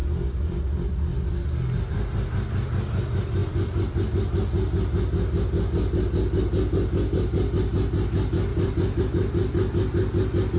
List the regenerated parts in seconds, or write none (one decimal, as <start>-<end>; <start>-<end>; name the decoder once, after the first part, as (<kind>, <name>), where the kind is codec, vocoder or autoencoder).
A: 0.0-1.3 (vocoder, BigVGAN v2); 3.4-4.1; 8.5-9.0